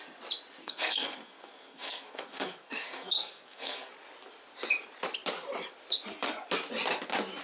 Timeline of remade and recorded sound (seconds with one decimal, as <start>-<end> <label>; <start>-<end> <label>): 0.0-0.6 recorded; 0.6-3.9 remade; 3.9-7.4 recorded